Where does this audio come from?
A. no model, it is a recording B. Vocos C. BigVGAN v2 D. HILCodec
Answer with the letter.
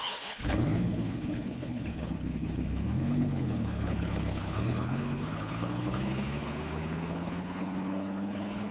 D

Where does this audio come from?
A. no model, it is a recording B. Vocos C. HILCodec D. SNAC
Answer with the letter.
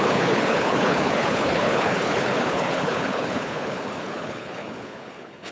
C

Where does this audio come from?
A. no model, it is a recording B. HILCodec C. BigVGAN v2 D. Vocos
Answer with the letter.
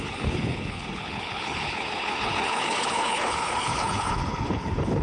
B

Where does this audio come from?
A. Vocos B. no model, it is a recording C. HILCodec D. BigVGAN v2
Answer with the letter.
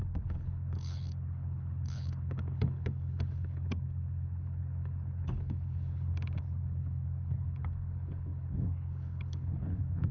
C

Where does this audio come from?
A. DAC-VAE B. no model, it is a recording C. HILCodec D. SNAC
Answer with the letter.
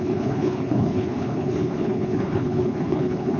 C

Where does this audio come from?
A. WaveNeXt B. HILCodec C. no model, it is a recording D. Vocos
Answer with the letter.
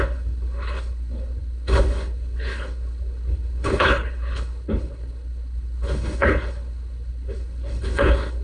B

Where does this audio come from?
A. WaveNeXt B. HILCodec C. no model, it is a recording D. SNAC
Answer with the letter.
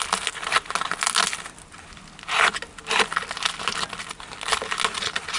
C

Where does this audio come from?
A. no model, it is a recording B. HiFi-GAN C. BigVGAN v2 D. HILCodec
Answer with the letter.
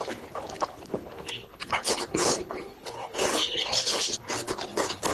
D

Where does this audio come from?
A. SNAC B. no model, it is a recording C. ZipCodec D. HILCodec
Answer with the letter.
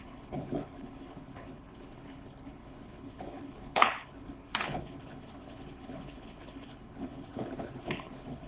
D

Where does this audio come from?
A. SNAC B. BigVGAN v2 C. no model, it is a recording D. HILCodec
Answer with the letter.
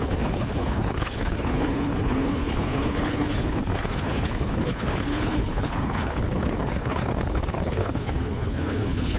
D